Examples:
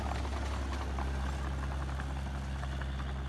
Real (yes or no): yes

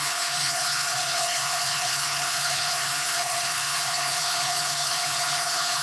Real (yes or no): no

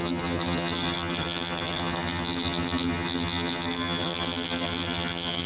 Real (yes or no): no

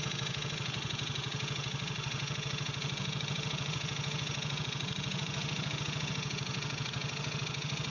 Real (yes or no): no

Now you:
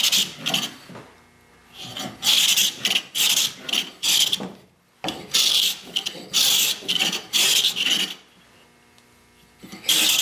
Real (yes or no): yes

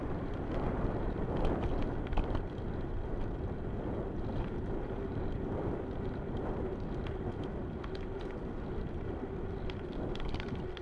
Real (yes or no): no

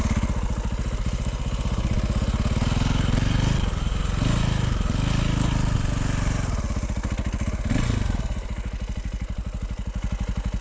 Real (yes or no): yes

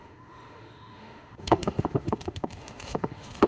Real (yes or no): no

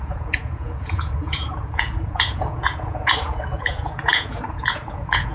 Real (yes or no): no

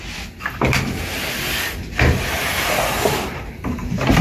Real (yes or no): yes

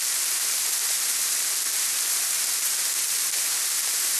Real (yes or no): yes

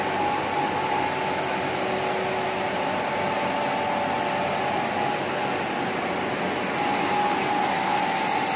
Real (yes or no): yes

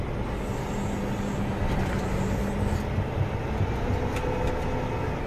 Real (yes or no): yes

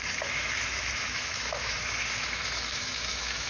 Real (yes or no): no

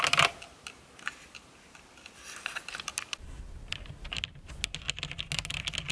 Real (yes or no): yes